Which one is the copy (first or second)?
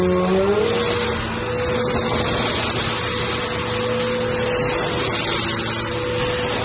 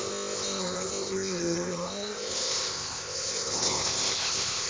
second